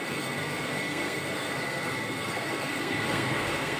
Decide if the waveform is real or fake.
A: fake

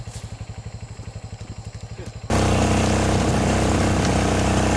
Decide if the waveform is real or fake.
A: real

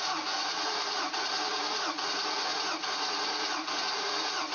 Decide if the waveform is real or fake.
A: fake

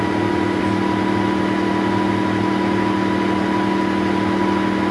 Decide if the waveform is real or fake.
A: real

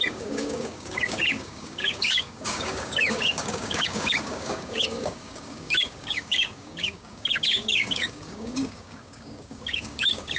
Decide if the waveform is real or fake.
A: fake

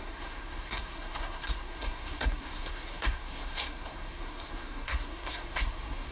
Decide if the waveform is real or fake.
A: fake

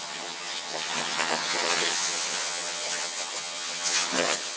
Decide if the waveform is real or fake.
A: fake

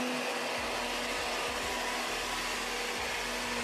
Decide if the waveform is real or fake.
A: real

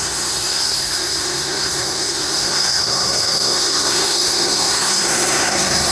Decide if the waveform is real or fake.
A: fake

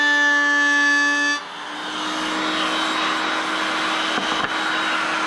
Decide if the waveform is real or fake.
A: real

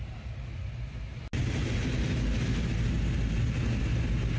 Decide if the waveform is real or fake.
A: real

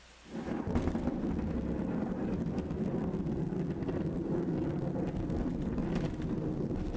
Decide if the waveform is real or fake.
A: real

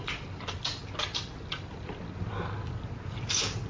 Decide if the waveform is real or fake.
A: real